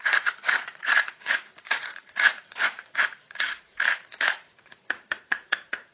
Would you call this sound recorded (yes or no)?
no